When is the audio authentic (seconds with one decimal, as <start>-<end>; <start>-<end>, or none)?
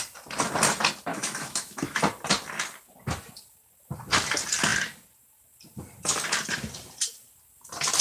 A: 0.0-1.1; 2.0-8.0